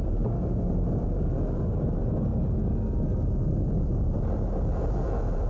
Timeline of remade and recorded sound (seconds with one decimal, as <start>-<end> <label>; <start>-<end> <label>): 0.0-5.5 recorded